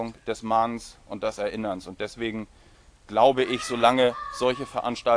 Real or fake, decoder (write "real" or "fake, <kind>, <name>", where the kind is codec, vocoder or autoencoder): real